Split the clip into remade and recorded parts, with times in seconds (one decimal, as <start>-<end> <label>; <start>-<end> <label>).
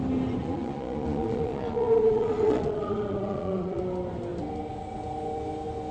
0.0-0.4 recorded; 0.4-3.8 remade; 3.8-5.9 recorded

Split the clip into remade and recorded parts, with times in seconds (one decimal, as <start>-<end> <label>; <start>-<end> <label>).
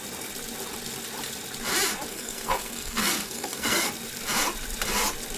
0.0-2.1 recorded; 2.1-3.9 remade; 3.9-5.4 recorded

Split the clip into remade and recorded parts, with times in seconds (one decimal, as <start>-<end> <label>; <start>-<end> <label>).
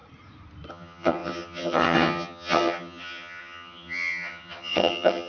0.0-0.7 recorded; 0.7-5.3 remade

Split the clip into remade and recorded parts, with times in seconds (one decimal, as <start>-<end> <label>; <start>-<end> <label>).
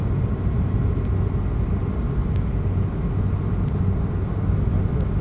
0.0-5.2 recorded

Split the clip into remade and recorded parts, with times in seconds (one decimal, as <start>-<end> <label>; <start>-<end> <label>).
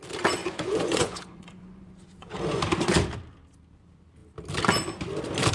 0.0-0.4 recorded; 0.4-2.6 remade; 2.6-5.5 recorded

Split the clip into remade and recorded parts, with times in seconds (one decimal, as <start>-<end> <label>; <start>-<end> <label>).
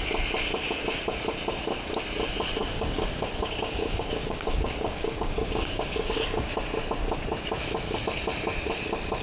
0.0-2.6 recorded; 2.6-6.5 remade; 6.5-9.2 recorded